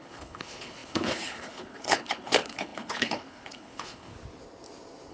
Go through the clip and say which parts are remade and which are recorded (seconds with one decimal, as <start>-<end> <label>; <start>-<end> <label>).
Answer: 0.0-4.1 remade; 4.1-5.1 recorded